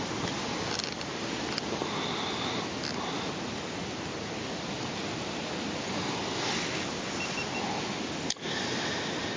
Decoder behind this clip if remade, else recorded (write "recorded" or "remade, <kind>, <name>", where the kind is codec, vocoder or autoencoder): recorded